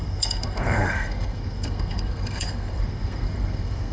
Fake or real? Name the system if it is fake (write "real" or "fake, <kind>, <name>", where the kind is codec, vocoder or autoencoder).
fake, codec, SNAC